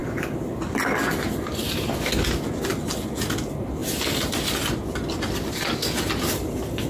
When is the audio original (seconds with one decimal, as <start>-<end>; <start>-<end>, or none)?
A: 0.0-6.9